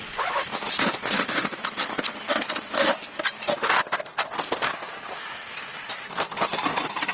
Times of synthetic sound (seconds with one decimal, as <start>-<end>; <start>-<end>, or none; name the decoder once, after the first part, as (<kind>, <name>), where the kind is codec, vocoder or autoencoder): 0.0-3.4 (vocoder, BigVGAN v2); 5.9-6.4